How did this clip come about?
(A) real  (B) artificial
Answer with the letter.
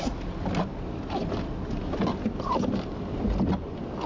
A